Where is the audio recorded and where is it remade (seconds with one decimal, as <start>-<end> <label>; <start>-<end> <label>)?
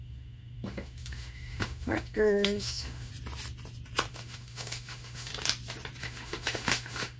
0.0-3.1 remade; 3.1-4.1 recorded; 4.1-5.3 remade; 5.3-6.0 recorded; 6.0-7.2 remade